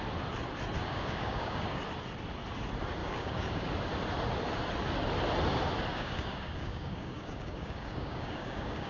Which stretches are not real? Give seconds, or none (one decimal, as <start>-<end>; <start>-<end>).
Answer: 0.8-1.8; 3.0-3.7; 5.9-8.9